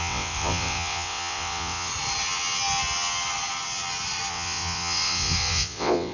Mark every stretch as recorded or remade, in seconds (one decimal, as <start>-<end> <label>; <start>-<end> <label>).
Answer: 0.0-1.9 remade; 1.9-4.3 recorded; 4.3-6.1 remade